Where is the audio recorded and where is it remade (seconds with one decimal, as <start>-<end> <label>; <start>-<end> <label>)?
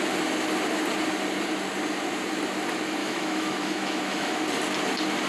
0.0-3.0 recorded; 3.0-4.4 remade; 4.4-5.3 recorded